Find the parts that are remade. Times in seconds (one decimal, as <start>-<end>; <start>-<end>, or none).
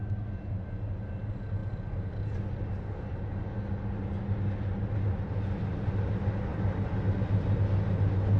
6.5-7.3